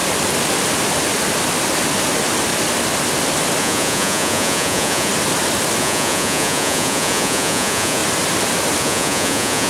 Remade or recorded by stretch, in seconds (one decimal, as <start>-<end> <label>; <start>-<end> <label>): 0.0-3.6 recorded; 3.6-5.1 remade; 5.1-5.8 recorded; 5.8-8.0 remade; 8.0-8.8 recorded; 8.8-9.7 remade